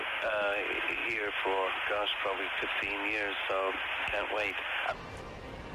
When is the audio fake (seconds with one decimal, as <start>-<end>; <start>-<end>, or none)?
none